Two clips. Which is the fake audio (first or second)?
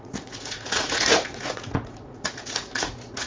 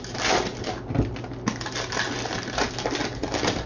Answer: first